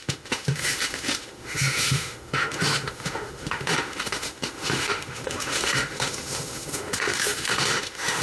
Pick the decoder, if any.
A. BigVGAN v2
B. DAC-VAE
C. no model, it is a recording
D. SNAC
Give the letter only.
B